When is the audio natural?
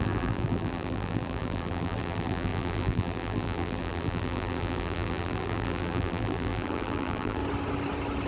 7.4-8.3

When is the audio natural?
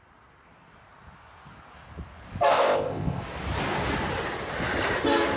0.0-2.5; 3.2-5.4